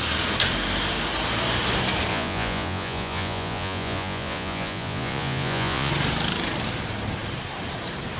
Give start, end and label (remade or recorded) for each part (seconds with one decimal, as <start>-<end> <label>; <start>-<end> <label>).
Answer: 0.0-2.1 recorded; 2.1-5.9 remade; 5.9-8.2 recorded